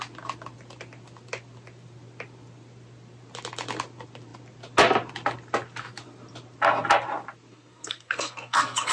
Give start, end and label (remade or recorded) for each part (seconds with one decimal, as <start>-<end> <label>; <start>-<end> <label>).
0.0-7.5 recorded; 7.5-8.9 remade